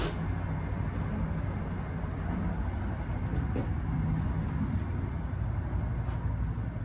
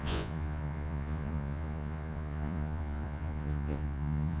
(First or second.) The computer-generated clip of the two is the second